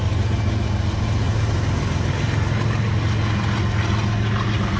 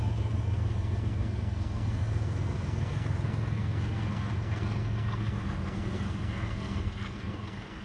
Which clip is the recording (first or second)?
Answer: first